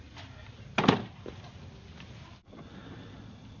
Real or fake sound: real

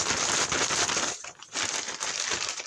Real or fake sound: real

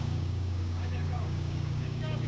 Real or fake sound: fake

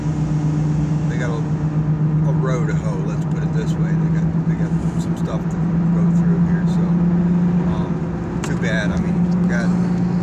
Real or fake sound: real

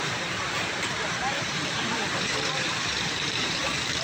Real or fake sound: fake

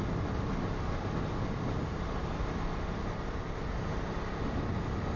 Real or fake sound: real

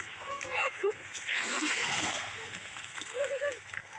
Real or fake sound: fake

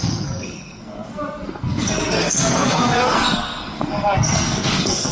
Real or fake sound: fake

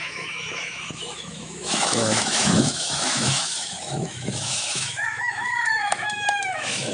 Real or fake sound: fake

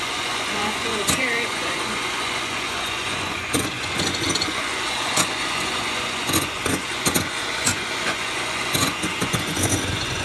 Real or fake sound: fake